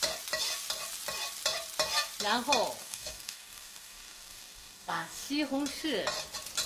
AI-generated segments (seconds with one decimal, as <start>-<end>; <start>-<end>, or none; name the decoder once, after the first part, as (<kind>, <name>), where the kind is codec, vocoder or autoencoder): 2.8-5.3 (codec, DAC)